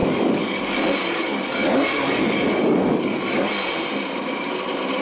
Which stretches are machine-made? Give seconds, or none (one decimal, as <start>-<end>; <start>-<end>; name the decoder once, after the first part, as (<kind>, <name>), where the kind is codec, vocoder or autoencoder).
0.0-0.6 (codec, DAC); 1.0-3.5

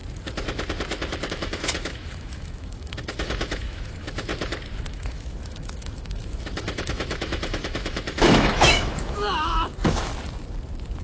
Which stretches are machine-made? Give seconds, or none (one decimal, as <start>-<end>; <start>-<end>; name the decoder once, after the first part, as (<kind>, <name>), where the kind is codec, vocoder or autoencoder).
1.3-4.3 (autoencoder, DAC-VAE); 4.9-10.1

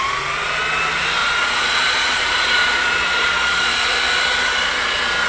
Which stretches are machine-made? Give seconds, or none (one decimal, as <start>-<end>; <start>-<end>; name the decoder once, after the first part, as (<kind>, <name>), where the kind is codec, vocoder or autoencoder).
1.2-3.7 (vocoder, Vocos)

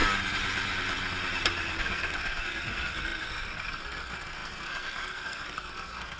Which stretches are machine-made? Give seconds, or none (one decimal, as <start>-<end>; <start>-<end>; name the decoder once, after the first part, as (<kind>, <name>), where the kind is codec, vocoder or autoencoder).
1.7-6.2 (codec, SNAC)

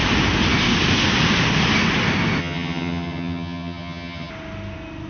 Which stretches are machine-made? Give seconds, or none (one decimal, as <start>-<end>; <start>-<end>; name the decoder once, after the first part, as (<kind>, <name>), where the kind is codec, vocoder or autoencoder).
2.4-4.3 (vocoder, HiFi-GAN)

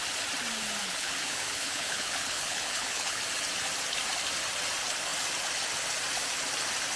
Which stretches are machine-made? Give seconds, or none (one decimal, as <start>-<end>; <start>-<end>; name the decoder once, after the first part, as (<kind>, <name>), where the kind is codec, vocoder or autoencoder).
0.8-3.2 (codec, HILCodec)

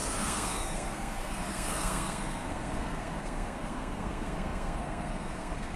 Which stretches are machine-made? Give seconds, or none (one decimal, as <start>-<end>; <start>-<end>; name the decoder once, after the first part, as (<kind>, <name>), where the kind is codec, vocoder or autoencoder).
0.0-5.8 (codec, SNAC)